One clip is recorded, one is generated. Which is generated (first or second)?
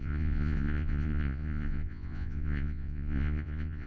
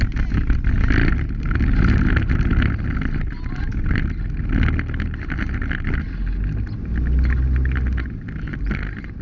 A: first